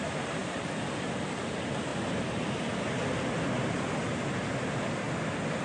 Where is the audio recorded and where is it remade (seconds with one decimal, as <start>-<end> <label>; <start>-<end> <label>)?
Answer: 0.0-0.4 remade; 0.4-1.4 recorded; 1.4-1.9 remade; 1.9-5.6 recorded